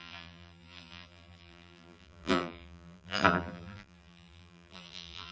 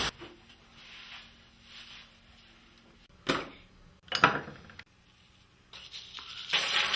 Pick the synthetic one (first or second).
first